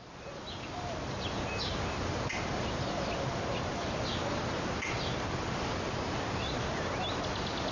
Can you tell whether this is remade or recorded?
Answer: recorded